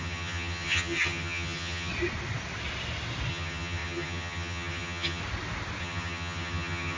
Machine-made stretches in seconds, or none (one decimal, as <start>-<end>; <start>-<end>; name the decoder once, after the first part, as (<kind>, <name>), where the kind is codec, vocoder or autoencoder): 0.0-1.9 (vocoder, HiFi-GAN); 3.3-5.2; 5.8-7.0